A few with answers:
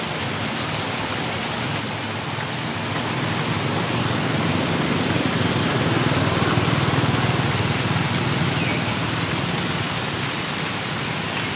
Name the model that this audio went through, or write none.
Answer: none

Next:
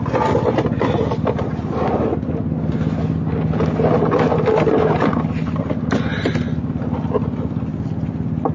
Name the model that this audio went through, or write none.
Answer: none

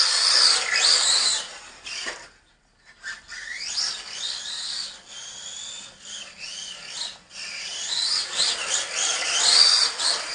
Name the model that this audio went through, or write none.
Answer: none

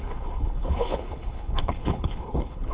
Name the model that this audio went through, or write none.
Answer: codec, HILCodec